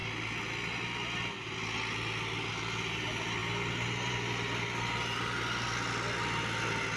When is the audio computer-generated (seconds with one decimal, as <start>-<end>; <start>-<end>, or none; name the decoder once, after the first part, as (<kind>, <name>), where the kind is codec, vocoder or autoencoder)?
none